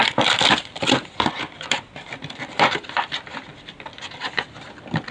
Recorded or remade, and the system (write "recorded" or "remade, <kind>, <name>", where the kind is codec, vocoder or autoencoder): recorded